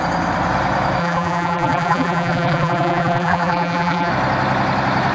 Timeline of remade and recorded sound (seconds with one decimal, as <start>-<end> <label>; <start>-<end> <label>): 0.0-1.0 recorded; 1.0-4.1 remade; 4.1-5.1 recorded